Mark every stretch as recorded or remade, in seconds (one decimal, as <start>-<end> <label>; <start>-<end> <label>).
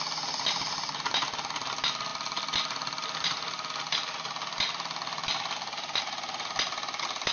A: 0.0-2.1 recorded; 2.1-6.0 remade; 6.0-7.3 recorded